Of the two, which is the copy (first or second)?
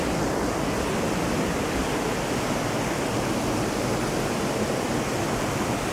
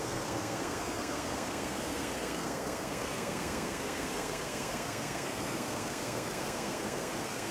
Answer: second